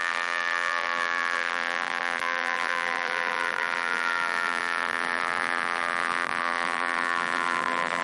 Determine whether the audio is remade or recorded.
remade